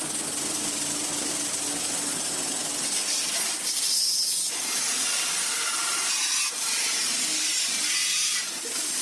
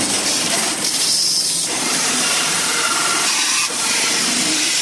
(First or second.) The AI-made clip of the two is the second